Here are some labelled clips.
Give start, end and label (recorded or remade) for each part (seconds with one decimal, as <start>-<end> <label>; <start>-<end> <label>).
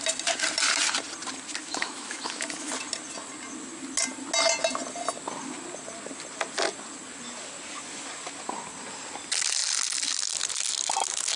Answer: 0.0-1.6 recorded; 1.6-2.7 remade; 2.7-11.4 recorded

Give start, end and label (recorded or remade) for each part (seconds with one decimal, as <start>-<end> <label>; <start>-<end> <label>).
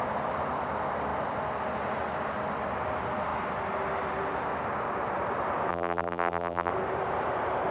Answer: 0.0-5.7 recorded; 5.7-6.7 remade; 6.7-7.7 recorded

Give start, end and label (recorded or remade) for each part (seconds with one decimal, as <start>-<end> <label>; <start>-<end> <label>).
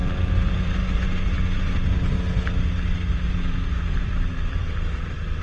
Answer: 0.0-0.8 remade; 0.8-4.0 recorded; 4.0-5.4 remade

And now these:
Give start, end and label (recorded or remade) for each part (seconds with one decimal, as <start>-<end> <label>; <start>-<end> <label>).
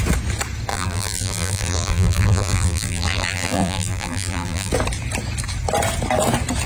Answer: 0.0-0.7 recorded; 0.7-4.7 remade; 4.7-6.7 recorded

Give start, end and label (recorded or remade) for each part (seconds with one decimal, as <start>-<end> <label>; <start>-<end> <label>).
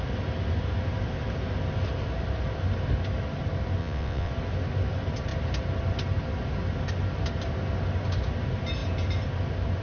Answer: 0.0-3.8 recorded; 3.8-4.3 remade; 4.3-9.8 recorded